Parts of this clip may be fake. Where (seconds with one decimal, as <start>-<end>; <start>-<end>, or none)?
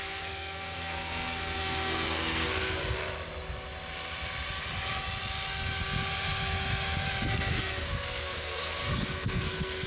0.0-2.8; 7.3-9.9